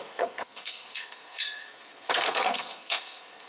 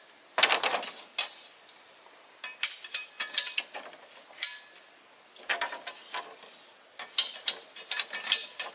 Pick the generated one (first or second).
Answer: first